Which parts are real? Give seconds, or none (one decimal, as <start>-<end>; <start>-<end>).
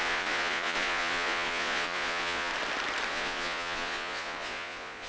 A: 2.5-3.1